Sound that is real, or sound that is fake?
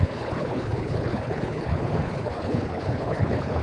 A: fake